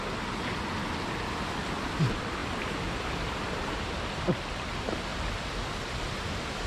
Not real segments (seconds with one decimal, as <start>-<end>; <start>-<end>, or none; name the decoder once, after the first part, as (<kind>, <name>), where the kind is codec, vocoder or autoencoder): none